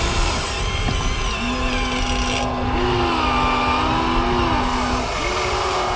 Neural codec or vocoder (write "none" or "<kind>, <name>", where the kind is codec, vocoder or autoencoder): none